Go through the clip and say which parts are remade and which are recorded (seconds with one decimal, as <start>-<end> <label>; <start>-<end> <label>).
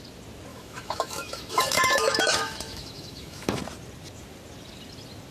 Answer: 0.0-0.5 recorded; 0.5-3.6 remade; 3.6-5.3 recorded